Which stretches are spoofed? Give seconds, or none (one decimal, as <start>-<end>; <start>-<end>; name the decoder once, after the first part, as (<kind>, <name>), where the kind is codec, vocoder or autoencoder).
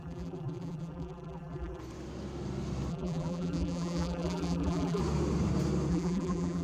0.0-1.8 (vocoder, BigVGAN v2); 2.9-5.0; 5.9-6.6